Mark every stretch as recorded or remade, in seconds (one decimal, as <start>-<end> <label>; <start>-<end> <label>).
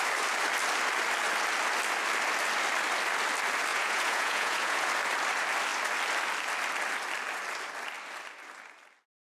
0.0-3.7 recorded; 3.7-4.9 remade; 4.9-9.3 recorded